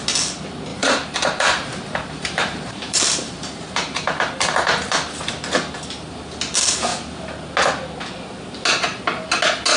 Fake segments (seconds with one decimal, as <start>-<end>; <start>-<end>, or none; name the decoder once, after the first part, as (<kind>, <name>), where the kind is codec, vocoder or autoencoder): 0.7-5.3 (vocoder, BigVGAN v2)